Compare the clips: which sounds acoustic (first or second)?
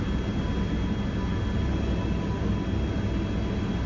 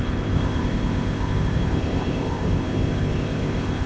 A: first